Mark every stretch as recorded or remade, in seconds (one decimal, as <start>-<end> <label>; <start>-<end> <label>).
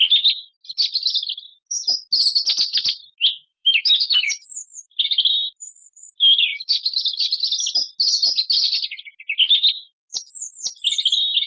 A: 0.0-3.4 recorded; 3.4-5.0 remade; 5.0-6.5 recorded; 6.5-7.3 remade; 7.3-11.5 recorded